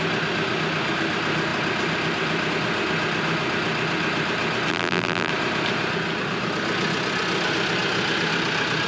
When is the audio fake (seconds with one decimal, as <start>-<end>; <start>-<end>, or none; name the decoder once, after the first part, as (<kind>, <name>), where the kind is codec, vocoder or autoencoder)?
4.7-5.3 (vocoder, BigVGAN v2)